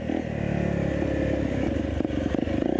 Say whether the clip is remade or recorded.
recorded